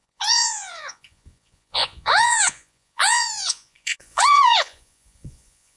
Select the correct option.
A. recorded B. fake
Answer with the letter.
B